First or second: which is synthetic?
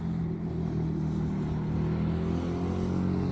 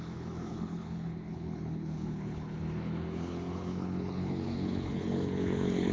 second